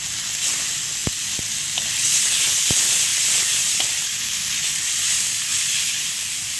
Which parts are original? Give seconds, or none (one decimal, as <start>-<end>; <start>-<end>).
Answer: 0.0-3.1; 5.1-6.6